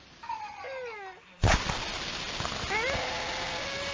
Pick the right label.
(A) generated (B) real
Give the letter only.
B